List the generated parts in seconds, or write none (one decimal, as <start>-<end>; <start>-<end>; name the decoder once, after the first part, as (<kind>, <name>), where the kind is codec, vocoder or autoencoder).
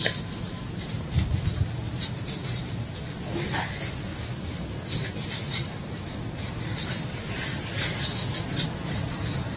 0.0-9.6 (vocoder, BigVGAN v2)